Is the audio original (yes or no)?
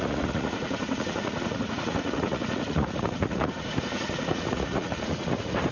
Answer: no